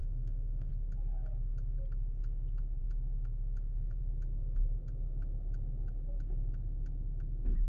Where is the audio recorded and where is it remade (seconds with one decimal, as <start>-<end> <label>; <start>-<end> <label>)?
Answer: 0.0-0.7 remade; 0.7-7.7 recorded